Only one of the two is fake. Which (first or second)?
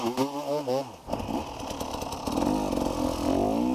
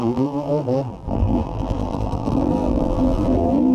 second